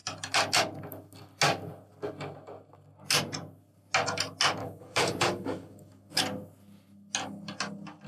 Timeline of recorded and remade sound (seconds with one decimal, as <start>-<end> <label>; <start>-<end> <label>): 0.0-4.6 recorded; 4.6-6.2 remade; 6.2-8.1 recorded